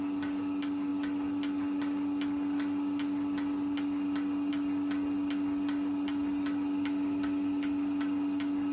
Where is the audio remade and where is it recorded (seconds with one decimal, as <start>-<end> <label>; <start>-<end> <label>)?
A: 0.0-8.7 recorded